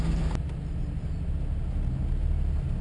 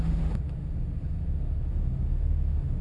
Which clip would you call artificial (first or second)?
second